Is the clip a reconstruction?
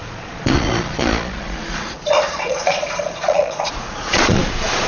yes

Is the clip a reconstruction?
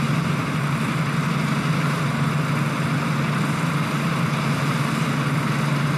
no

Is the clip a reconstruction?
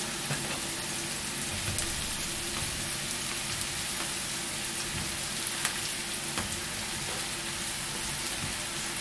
no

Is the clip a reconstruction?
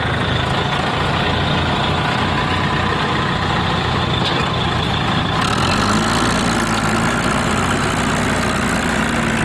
no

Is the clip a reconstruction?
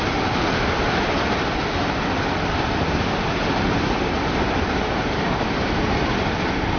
yes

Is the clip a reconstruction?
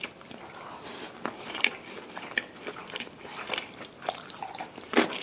no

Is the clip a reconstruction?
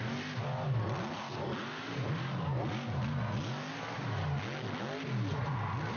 no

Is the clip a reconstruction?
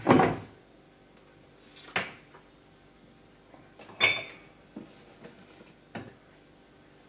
no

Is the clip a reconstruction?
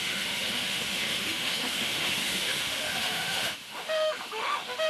yes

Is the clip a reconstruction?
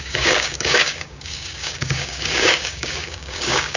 yes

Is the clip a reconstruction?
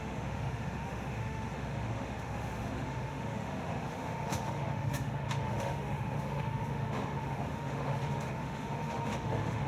yes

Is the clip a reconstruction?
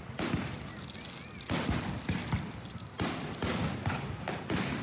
no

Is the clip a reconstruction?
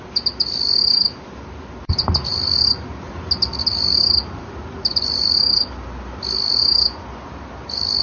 no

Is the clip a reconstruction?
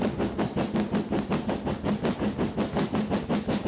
no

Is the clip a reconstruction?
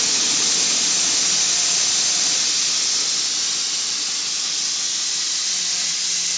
no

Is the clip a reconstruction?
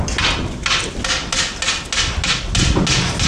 no